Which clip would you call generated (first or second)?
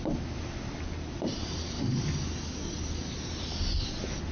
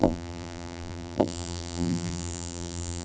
second